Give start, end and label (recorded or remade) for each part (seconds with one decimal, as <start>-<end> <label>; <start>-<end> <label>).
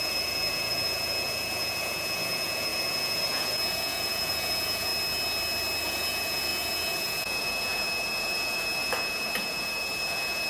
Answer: 0.0-4.9 remade; 4.9-5.8 recorded; 5.8-10.5 remade